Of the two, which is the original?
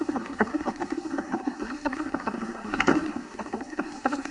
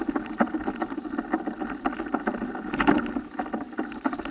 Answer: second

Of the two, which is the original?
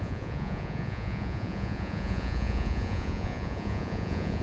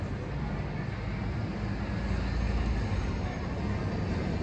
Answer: second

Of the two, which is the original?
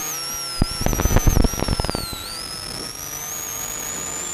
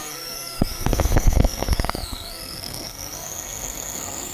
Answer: first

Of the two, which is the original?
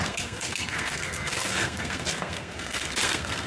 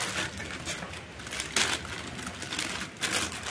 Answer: second